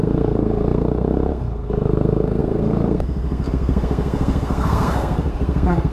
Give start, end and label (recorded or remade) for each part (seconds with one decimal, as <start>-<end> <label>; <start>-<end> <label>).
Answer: 0.0-5.9 remade